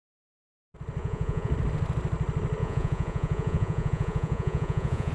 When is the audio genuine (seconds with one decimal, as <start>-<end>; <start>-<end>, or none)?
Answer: 0.0-1.0; 1.5-2.6